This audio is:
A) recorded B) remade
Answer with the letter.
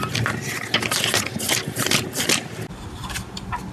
A